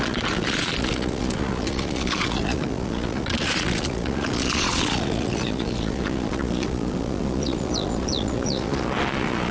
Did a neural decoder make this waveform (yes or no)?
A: yes